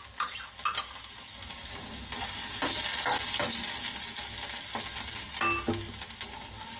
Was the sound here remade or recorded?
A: recorded